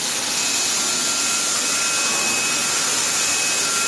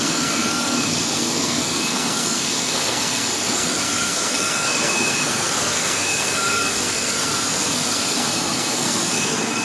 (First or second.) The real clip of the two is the first